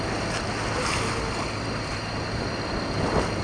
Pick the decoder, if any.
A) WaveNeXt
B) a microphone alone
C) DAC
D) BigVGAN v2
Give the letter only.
B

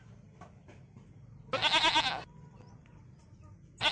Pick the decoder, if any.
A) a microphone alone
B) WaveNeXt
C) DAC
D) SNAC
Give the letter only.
A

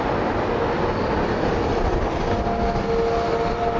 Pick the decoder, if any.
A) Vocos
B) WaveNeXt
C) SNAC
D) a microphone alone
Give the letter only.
D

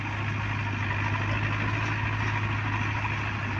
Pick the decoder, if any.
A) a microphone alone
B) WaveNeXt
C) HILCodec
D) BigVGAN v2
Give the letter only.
A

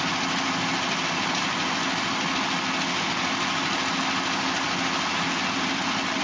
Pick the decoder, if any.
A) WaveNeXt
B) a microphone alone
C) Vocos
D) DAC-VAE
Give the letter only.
B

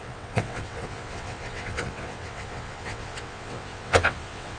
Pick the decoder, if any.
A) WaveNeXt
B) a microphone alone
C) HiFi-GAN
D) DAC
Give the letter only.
A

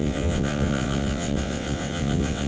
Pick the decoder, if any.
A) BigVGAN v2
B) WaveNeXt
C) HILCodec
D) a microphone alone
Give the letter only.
B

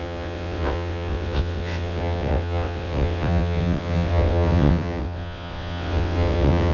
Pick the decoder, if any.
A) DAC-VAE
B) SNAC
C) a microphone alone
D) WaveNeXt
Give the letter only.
D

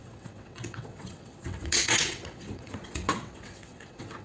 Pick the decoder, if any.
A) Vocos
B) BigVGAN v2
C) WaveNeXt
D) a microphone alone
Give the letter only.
C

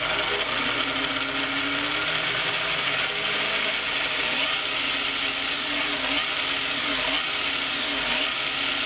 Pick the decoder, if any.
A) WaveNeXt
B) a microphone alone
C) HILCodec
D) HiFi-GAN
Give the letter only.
B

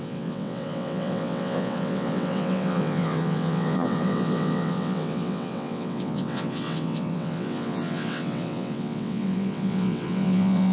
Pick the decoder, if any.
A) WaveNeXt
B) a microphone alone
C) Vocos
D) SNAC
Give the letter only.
A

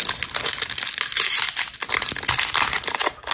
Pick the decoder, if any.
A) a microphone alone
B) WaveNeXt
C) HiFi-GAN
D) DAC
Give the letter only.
A